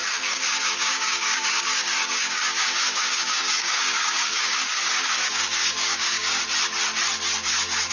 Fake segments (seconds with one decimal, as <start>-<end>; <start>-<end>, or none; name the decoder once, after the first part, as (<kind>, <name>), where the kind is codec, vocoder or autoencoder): 0.0-6.4 (codec, DAC)

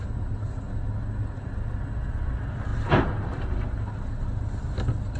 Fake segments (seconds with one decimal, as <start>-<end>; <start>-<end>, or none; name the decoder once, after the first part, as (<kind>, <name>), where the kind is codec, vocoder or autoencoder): none

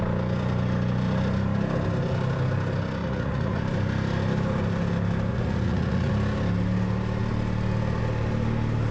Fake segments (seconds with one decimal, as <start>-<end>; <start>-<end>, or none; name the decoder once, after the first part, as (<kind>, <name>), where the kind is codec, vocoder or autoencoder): 3.0-3.6 (vocoder, Vocos); 5.3-6.1

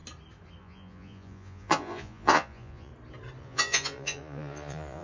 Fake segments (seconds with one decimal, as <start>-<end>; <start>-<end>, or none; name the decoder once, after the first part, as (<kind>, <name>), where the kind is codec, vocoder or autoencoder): 0.6-2.9 (vocoder, Vocos); 3.4-5.0